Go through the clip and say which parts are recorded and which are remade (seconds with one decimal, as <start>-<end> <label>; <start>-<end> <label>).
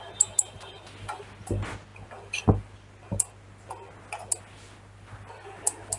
0.0-6.0 recorded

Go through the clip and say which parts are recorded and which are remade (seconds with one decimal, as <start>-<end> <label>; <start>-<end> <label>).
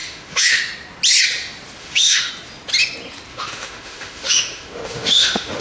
0.0-0.6 remade; 0.6-1.8 recorded; 1.8-2.3 remade; 2.3-3.3 recorded; 3.3-5.6 remade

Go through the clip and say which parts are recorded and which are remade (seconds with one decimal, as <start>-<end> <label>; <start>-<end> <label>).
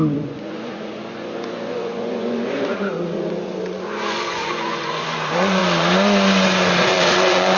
0.0-5.6 remade; 5.6-6.8 recorded; 6.8-7.6 remade